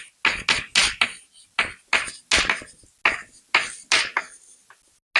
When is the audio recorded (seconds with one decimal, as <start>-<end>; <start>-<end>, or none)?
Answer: 0.0-5.2